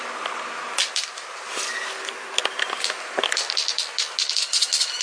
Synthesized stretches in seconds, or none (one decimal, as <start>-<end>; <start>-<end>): none